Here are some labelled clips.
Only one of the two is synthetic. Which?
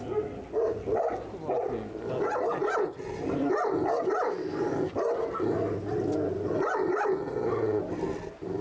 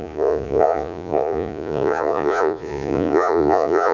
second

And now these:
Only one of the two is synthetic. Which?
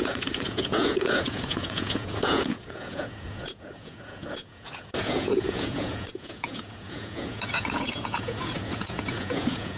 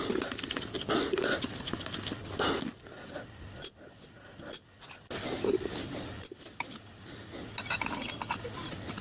first